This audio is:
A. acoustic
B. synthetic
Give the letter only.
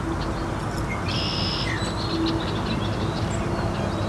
A